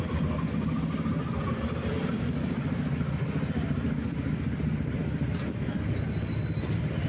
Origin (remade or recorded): remade